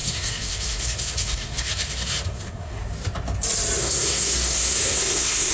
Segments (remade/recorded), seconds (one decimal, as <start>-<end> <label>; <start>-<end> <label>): 0.0-2.8 remade; 2.8-3.8 recorded; 3.8-5.5 remade